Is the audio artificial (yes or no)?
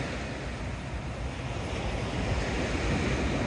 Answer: no